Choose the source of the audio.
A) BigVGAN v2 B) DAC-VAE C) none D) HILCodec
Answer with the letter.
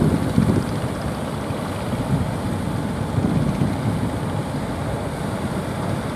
C